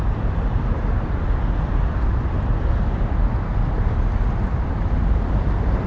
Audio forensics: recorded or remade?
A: recorded